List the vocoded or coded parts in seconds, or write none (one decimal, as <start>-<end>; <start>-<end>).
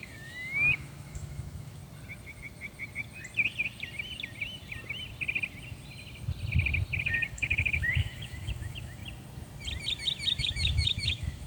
0.0-1.8; 7.0-9.0; 10.4-11.5